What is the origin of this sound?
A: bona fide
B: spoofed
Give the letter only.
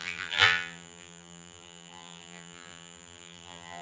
B